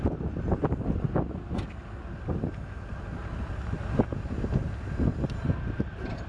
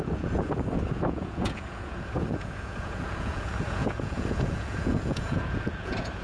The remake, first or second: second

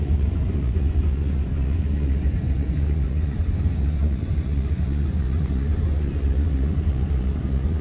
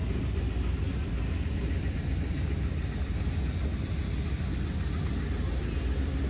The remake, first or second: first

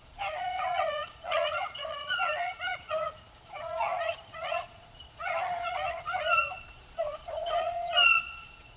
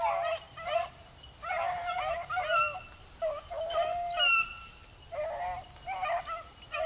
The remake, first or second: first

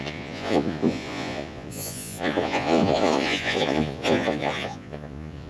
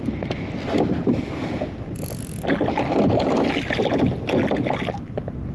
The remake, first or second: first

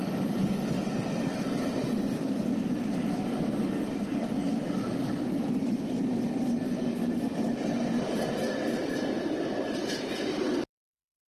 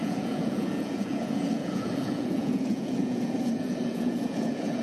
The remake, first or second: second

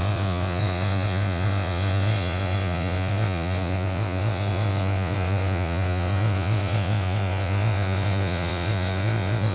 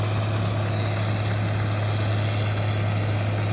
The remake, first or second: first